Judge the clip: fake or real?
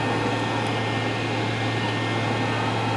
real